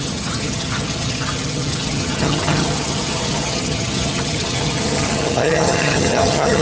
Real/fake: fake